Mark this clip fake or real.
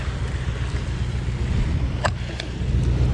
real